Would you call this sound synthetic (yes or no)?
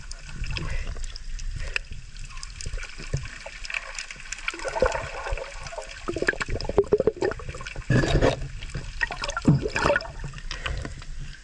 no